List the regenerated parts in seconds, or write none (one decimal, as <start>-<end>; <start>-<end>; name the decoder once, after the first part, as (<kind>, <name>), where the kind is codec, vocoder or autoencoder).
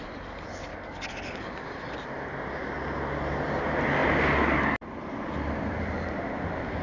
0.7-1.7 (codec, DAC)